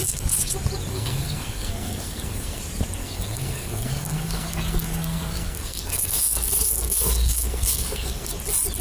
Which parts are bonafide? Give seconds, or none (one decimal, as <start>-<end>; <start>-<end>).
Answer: 0.5-0.9; 2.6-3.0; 8.3-8.8